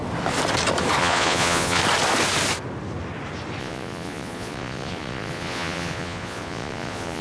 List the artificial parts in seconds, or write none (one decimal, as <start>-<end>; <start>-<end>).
1.0-1.8; 3.6-7.2

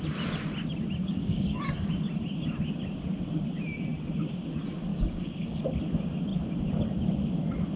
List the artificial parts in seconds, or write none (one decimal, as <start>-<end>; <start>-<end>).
1.0-1.9; 4.9-5.6